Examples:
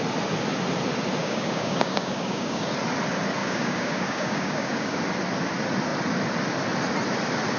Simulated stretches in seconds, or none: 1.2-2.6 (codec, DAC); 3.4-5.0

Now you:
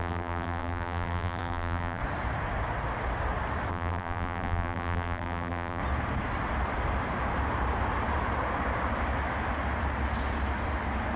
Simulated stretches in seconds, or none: 0.0-2.0 (vocoder, BigVGAN v2); 3.7-5.8